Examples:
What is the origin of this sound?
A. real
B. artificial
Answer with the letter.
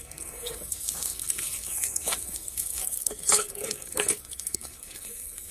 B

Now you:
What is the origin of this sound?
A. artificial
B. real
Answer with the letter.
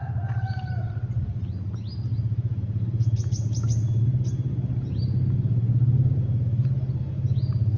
B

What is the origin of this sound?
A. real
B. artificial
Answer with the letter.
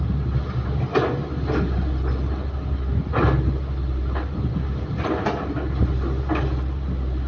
A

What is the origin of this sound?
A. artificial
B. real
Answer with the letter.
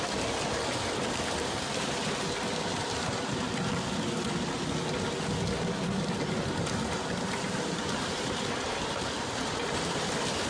B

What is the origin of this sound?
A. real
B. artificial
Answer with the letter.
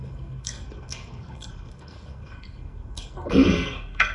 B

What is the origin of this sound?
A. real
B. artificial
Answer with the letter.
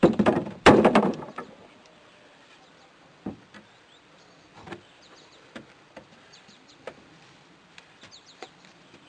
B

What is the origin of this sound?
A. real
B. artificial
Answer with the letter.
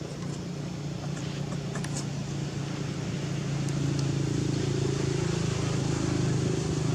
A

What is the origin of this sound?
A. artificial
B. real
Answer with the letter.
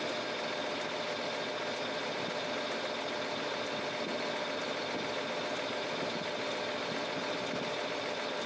B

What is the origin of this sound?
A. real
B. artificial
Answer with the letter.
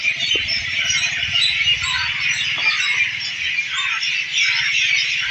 A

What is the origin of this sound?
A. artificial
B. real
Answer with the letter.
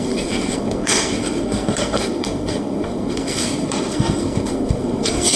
A